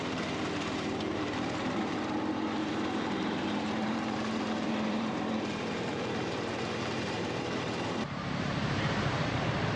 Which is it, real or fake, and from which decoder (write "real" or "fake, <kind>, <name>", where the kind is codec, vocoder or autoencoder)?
fake, vocoder, BigVGAN v2